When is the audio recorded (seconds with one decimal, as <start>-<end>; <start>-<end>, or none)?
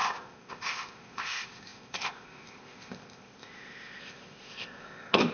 none